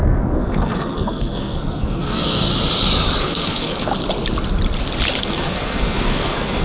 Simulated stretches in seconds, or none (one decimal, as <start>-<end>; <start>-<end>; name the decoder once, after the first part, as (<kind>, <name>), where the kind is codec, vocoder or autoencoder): 0.0-2.5 (codec, SNAC); 3.2-3.9; 5.2-6.6